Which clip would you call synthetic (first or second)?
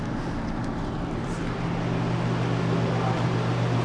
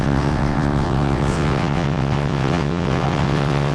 second